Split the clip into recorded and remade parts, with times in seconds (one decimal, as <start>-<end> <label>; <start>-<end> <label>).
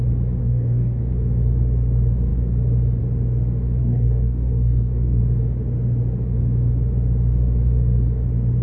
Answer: 0.0-0.4 recorded; 0.4-1.0 remade; 1.0-3.8 recorded; 3.8-5.2 remade; 5.2-8.6 recorded